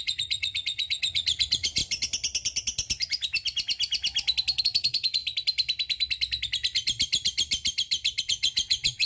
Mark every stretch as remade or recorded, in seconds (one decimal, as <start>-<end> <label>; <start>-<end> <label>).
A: 0.0-1.8 remade; 1.8-4.6 recorded; 4.6-5.2 remade; 5.2-8.2 recorded; 8.2-9.1 remade